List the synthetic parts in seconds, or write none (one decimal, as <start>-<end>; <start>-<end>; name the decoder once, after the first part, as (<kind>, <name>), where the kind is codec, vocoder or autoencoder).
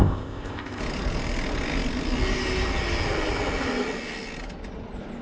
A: 0.0-0.8 (codec, ZipCodec)